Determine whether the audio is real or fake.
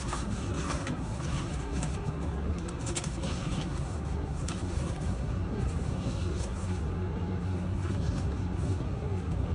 fake